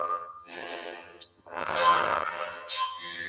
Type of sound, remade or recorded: remade